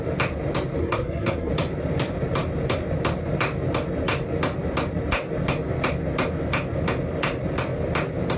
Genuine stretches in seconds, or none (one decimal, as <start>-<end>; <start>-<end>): 0.0-0.8; 1.5-8.4